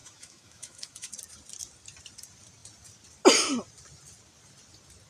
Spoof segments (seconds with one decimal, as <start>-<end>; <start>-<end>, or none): 0.0-1.1